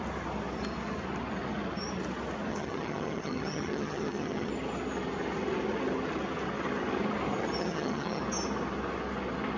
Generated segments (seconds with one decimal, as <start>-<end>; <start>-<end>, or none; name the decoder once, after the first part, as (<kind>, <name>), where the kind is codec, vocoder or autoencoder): 2.5-4.5 (vocoder, HiFi-GAN); 7.6-8.2